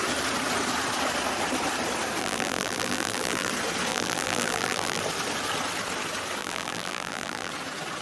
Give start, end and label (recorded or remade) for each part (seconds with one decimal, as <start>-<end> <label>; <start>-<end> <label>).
0.0-2.2 recorded; 2.2-3.5 remade; 3.5-3.9 recorded; 3.9-5.0 remade; 5.0-6.4 recorded; 6.4-7.5 remade; 7.5-8.0 recorded